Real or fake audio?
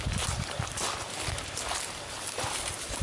fake